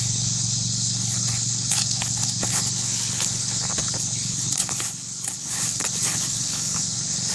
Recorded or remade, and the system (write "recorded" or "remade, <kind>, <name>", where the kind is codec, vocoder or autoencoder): remade, codec, HILCodec